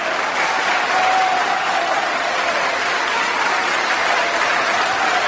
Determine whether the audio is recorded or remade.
recorded